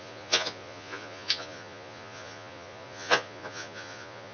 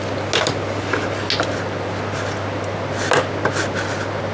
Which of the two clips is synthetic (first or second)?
first